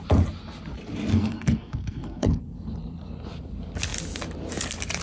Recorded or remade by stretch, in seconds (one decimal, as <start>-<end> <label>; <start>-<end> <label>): 0.0-1.1 recorded; 1.1-2.4 remade; 2.4-5.0 recorded